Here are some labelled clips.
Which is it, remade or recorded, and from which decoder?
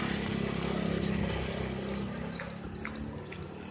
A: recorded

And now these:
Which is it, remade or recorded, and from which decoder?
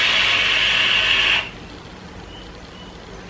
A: recorded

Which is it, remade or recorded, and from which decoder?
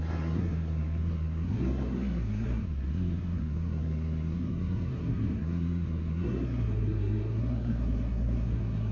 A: remade, codec, SNAC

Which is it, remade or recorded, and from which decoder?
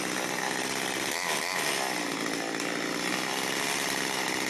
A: recorded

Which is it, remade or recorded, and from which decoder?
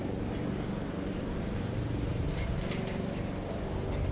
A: remade, vocoder, BigVGAN v2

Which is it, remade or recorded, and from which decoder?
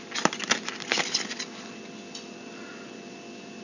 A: recorded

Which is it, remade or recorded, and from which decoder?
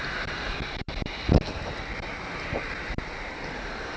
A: recorded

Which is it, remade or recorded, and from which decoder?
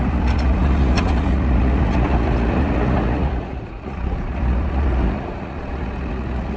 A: remade, vocoder, Vocos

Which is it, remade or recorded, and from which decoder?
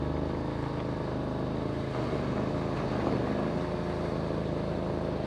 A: recorded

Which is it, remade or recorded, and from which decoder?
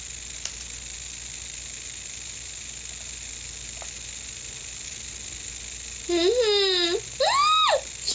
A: recorded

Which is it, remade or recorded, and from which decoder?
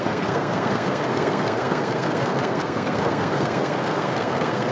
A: remade, codec, SNAC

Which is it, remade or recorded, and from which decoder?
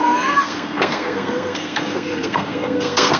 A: remade, codec, SNAC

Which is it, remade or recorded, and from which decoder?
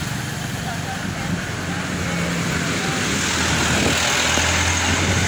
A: recorded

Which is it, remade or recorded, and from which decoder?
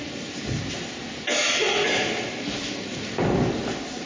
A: recorded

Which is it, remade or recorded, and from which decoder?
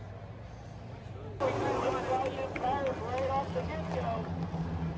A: recorded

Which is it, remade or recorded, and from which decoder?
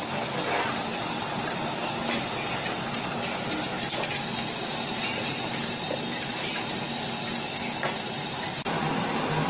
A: recorded